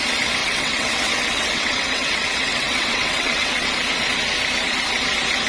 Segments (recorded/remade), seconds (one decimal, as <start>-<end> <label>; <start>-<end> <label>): 0.0-0.4 recorded; 0.4-3.7 remade; 3.7-5.5 recorded